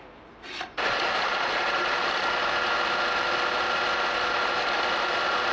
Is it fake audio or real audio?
real